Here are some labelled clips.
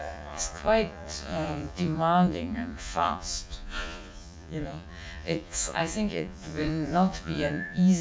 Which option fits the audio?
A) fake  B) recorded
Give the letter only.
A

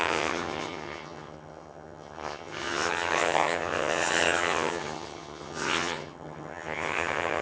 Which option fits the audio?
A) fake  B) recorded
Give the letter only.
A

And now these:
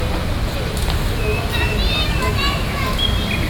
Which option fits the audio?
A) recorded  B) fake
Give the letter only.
A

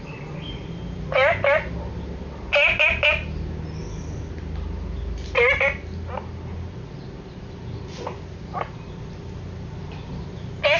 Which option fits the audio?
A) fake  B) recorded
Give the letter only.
B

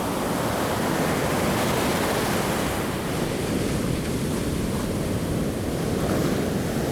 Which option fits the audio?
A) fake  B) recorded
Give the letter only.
B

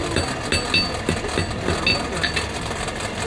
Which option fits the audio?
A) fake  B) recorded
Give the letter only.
B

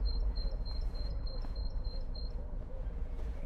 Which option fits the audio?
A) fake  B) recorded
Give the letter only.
A